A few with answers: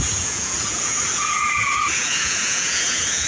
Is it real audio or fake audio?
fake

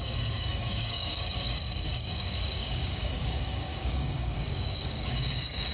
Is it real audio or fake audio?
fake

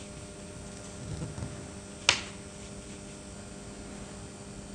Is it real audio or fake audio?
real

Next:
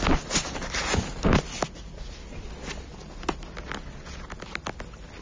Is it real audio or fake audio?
real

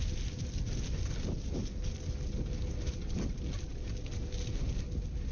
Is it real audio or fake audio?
real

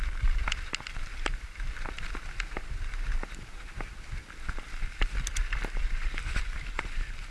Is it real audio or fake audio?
real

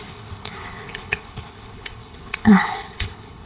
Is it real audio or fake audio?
fake